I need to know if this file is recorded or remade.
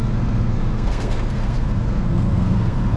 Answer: remade